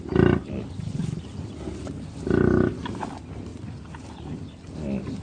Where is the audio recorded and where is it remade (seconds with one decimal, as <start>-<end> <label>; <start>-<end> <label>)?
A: 0.0-5.2 recorded